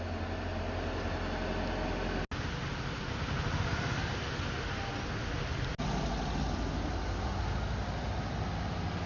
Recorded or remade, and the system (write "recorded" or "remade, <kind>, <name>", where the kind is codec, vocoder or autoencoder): recorded